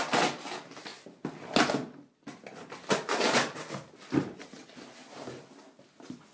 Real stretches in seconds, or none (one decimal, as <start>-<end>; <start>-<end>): 0.0-6.3